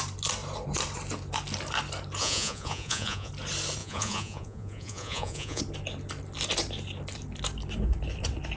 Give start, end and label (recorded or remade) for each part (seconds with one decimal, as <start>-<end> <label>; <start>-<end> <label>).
0.0-2.2 recorded; 2.2-3.3 remade; 3.3-3.8 recorded; 3.8-5.6 remade; 5.6-8.6 recorded